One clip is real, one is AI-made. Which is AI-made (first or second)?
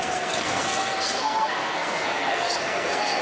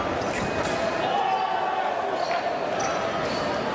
first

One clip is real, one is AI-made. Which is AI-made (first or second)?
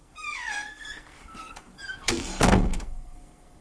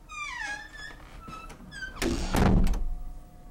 first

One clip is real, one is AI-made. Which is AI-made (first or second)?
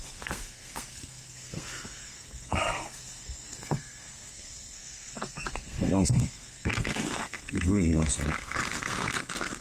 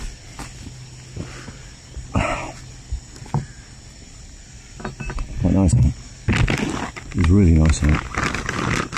first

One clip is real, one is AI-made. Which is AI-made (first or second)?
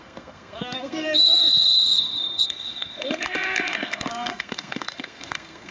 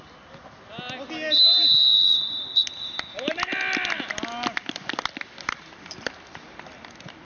first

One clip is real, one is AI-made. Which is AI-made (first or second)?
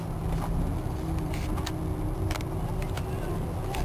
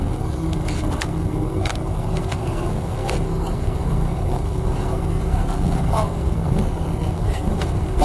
second